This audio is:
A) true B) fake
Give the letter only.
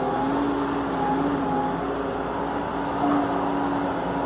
A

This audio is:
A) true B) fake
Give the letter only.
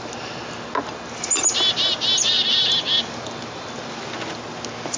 A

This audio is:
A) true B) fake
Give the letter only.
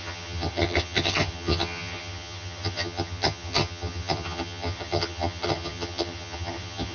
B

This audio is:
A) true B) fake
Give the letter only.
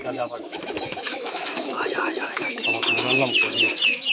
B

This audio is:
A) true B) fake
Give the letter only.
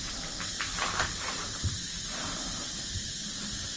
A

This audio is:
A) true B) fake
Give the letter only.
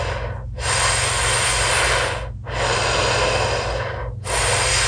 A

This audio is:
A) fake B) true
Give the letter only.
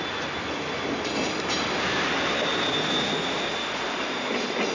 B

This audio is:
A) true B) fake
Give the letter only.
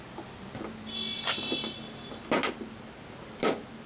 A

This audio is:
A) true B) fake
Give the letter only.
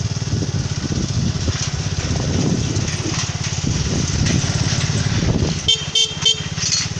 A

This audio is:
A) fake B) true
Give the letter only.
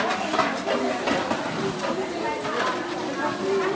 B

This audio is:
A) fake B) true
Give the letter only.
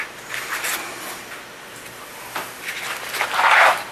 B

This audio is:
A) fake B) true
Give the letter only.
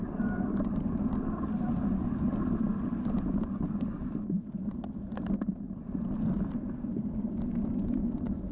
B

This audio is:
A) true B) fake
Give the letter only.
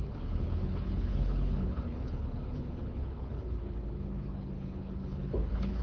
B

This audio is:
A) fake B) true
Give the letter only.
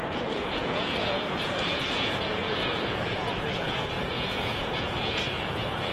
A